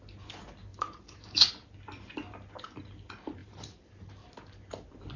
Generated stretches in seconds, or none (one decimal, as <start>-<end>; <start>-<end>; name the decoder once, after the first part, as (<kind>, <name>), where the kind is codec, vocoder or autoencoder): 0.7-1.5 (vocoder, BigVGAN v2); 3.4-4.1